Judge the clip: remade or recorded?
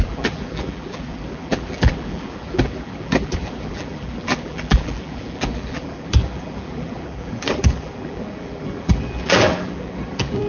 remade